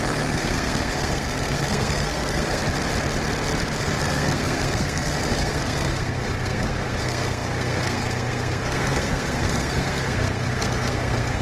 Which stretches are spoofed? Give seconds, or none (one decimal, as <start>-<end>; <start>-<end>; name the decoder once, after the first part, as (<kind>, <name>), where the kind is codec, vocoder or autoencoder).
0.0-2.6 (codec, SNAC); 3.8-11.4